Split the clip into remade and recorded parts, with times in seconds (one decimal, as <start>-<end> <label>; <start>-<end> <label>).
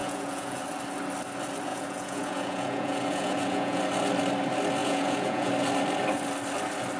0.0-0.6 remade; 0.6-1.7 recorded; 1.7-3.8 remade; 3.8-4.8 recorded; 4.8-5.5 remade; 5.5-7.0 recorded